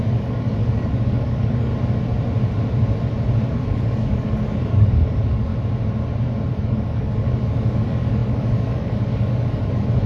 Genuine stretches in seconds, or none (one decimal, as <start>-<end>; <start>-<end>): 1.7-3.5; 5.5-6.6